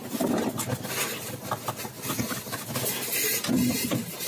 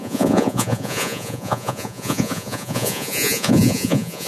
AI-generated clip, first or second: second